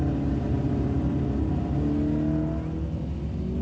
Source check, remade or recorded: recorded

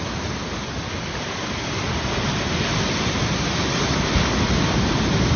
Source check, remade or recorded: recorded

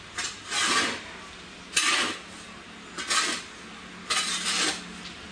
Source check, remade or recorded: recorded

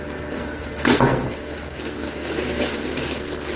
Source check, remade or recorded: remade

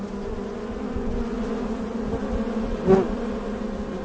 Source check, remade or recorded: recorded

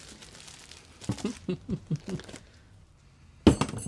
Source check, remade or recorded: recorded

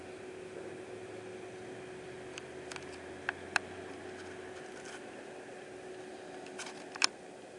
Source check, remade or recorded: recorded